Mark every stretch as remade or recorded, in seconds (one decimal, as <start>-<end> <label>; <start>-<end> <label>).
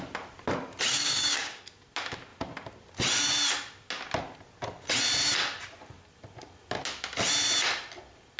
0.0-0.9 recorded; 0.9-1.6 remade; 1.6-8.4 recorded